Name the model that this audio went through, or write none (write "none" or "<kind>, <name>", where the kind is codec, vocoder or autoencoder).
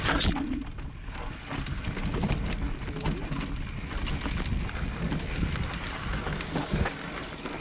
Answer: none